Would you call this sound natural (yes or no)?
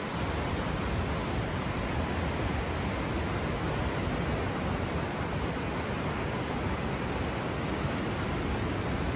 yes